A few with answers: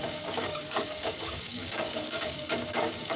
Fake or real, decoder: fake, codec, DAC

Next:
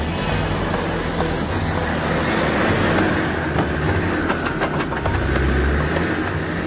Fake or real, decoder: real